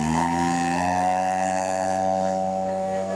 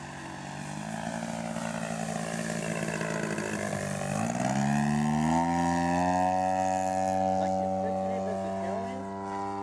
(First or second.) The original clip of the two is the second